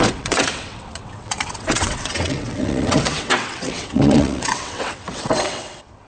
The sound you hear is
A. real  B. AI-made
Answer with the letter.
B